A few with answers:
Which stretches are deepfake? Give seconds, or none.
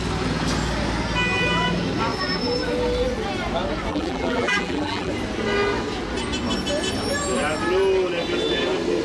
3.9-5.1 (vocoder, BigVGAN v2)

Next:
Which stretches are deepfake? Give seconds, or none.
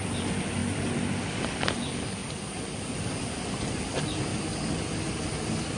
0.6-1.2 (vocoder, BigVGAN v2); 2.2-3.0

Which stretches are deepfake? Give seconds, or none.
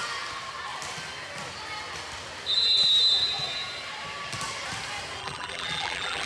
5.2-6.3 (vocoder, BigVGAN v2)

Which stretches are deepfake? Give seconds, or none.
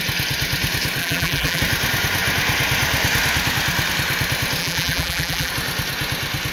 1.0-1.6 (vocoder, BigVGAN v2); 4.6-5.5